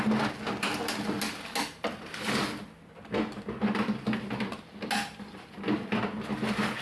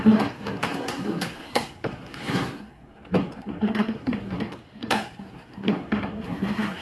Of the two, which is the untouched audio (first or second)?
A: first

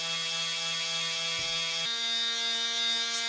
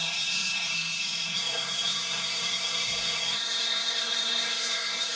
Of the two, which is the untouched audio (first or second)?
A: first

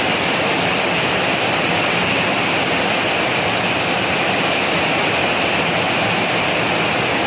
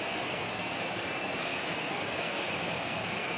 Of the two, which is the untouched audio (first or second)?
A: first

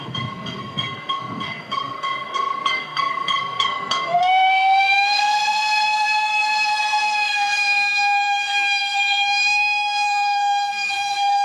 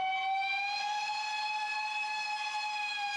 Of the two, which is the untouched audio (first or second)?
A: second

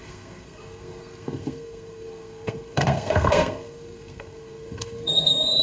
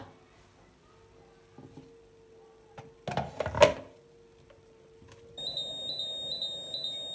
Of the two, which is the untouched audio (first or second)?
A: second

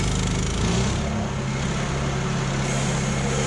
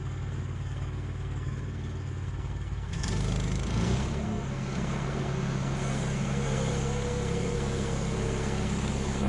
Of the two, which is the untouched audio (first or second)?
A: first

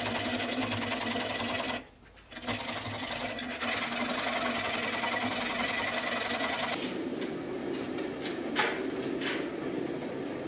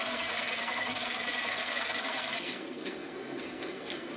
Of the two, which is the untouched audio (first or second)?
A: first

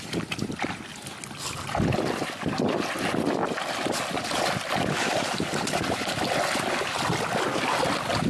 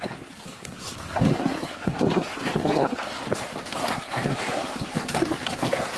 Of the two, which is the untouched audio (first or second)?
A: first